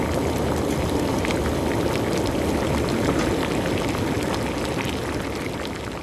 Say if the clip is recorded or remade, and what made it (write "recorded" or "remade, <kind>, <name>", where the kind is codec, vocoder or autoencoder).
recorded